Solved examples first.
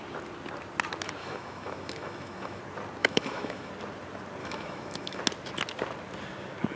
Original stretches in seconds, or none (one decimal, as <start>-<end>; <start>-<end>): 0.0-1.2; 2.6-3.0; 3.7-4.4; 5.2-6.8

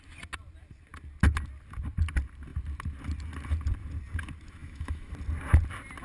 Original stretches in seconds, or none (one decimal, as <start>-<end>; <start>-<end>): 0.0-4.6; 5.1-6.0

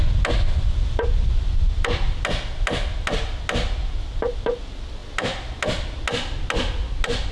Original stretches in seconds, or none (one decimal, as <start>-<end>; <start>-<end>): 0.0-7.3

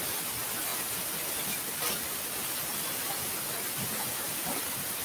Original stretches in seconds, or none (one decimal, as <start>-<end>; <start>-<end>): 0.0-5.0

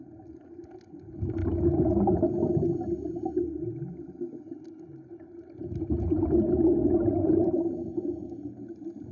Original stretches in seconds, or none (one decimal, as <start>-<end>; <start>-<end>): 0.0-9.1

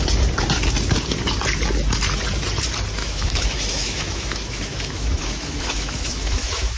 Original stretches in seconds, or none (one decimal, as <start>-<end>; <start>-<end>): 0.0-3.0

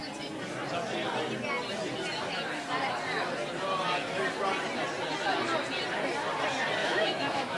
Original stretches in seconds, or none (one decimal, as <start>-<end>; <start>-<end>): 0.0-6.8

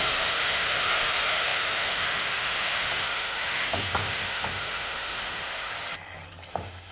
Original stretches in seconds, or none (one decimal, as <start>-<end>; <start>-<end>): 5.7-6.5